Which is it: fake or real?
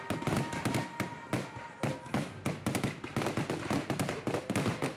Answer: real